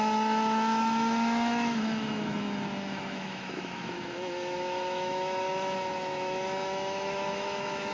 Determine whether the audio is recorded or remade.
remade